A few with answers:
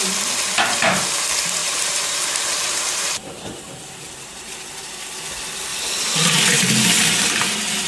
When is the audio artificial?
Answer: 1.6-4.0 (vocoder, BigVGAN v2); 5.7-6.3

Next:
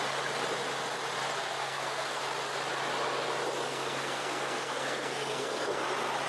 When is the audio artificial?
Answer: 1.6-2.2 (codec, SNAC); 3.7-5.8

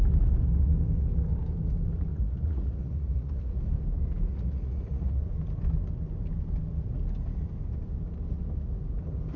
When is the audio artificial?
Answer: 2.1-3.6 (vocoder, Vocos); 4.3-5.2

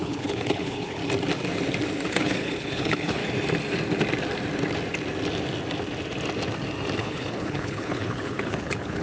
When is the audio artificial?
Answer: 0.0-1.0 (codec, HILCodec); 2.1-3.2; 7.0-9.0

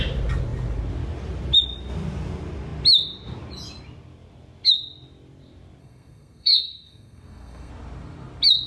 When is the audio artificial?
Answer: 5.8-7.7 (codec, SNAC)

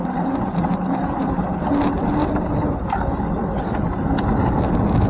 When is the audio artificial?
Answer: 0.5-1.6 (vocoder, BigVGAN v2); 2.2-3.2

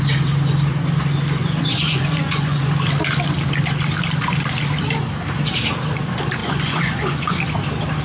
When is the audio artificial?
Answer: 1.4-2.7 (vocoder, Vocos); 6.4-7.4